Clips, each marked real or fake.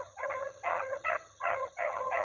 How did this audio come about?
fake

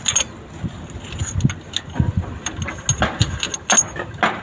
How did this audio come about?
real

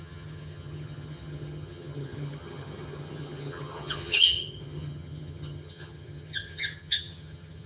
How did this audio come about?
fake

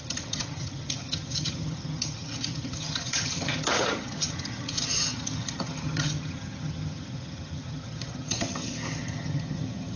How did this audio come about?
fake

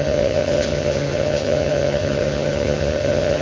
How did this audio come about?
fake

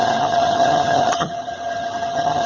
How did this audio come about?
fake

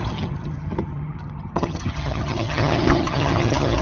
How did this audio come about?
fake